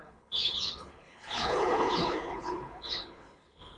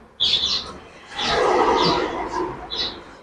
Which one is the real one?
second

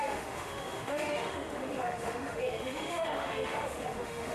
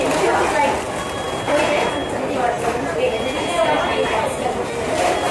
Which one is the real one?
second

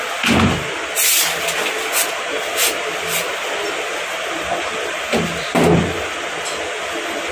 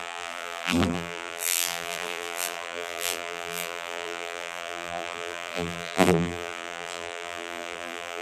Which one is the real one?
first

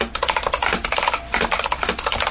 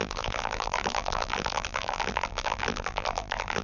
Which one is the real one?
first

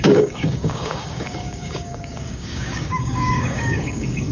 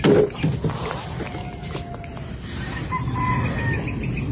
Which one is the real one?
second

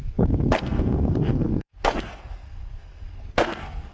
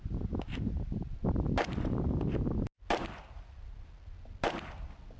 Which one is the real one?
second